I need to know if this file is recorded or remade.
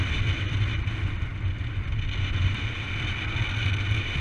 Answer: recorded